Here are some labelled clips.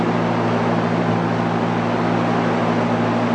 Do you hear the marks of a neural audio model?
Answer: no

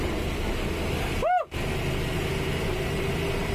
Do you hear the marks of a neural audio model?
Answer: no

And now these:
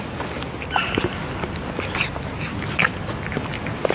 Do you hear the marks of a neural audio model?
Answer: no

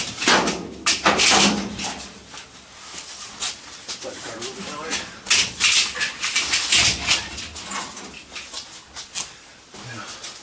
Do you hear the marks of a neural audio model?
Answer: no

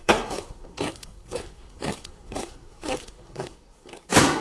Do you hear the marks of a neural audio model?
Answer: yes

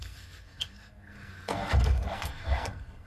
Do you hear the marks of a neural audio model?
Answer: yes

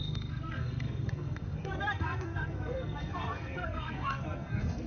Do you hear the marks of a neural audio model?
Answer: yes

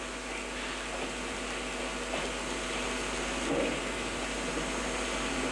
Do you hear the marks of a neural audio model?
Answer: no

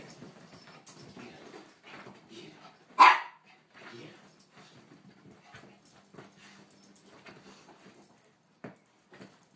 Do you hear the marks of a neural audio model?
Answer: no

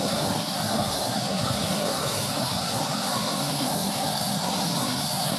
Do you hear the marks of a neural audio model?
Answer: yes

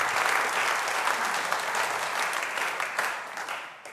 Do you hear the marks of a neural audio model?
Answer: no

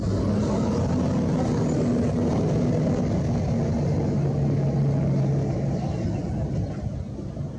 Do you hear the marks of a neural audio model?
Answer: no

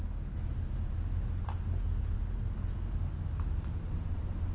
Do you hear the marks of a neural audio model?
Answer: no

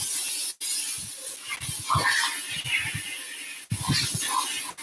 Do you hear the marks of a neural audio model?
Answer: no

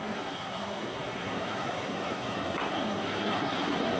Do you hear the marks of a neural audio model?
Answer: yes